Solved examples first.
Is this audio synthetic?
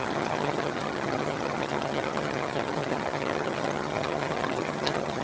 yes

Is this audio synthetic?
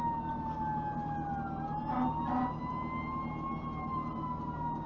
no